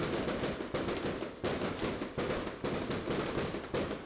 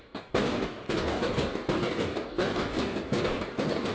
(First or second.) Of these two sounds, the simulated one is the second